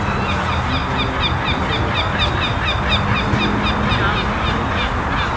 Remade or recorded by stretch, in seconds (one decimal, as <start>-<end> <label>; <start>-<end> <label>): 0.0-5.4 recorded